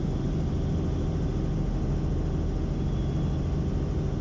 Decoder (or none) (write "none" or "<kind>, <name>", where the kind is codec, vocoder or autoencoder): none